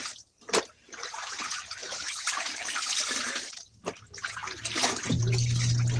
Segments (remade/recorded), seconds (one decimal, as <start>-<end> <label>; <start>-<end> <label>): 0.0-6.0 recorded